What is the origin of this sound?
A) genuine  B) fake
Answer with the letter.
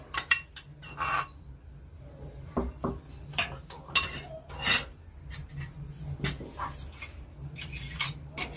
A